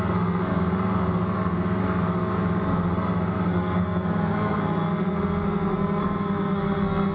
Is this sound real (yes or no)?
no